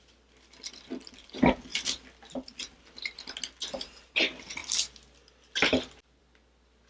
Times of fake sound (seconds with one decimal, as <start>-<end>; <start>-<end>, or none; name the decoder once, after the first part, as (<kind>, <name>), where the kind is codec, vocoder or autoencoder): none